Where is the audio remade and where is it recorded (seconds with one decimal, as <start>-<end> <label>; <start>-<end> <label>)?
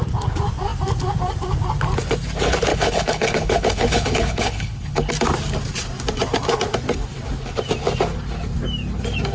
0.0-2.7 recorded; 2.7-5.1 remade; 5.1-9.3 recorded